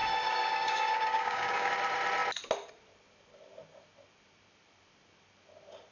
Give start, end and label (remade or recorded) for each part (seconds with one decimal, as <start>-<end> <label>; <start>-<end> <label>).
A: 0.0-1.7 remade; 1.7-5.9 recorded